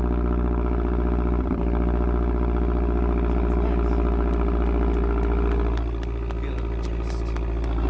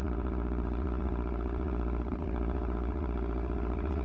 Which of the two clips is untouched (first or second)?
first